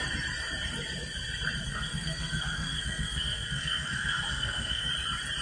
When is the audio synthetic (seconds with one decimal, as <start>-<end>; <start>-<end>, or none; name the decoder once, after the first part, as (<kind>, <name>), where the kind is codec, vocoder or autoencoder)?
1.7-4.9 (codec, SNAC)